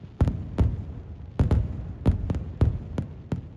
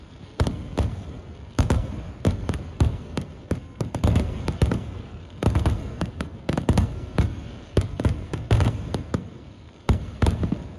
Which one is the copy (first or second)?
second